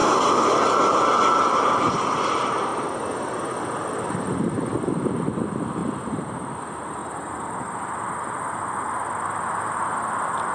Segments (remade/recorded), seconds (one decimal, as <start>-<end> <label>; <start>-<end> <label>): 0.0-1.2 recorded; 1.2-2.7 remade; 2.7-3.6 recorded; 3.6-7.0 remade; 7.0-8.6 recorded; 8.6-10.5 remade